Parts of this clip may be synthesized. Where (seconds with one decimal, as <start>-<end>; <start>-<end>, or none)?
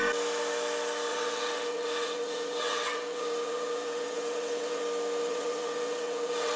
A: 1.1-4.8; 5.2-6.6